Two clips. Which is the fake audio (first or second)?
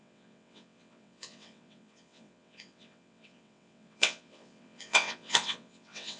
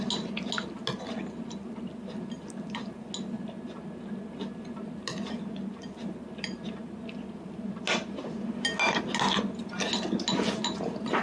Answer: first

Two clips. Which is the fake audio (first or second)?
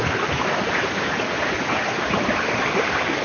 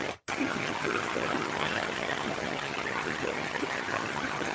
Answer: second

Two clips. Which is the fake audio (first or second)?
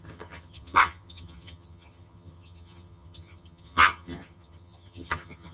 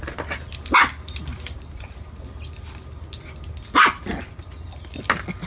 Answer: first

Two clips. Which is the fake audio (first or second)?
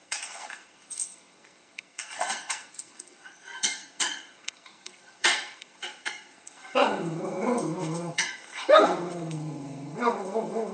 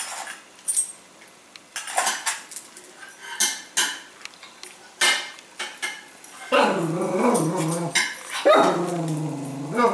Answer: first